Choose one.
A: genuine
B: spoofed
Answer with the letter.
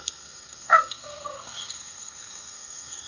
B